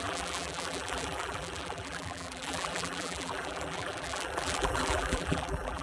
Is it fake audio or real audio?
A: fake